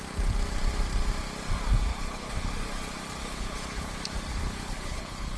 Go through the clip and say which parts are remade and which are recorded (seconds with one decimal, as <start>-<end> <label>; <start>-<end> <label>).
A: 0.0-1.9 recorded; 1.9-2.5 remade; 2.5-3.2 recorded; 3.2-3.9 remade; 3.9-4.3 recorded; 4.3-5.4 remade